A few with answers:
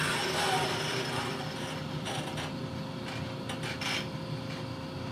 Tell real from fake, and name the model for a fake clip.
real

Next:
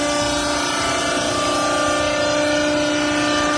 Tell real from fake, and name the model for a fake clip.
real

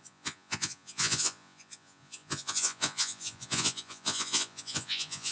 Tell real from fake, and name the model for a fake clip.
fake, vocoder, Vocos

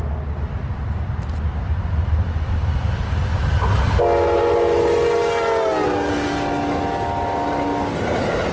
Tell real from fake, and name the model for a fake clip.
real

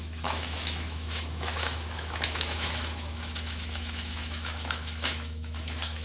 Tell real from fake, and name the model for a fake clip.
fake, autoencoder, DAC-VAE